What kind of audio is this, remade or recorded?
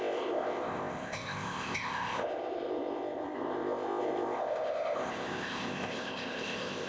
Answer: remade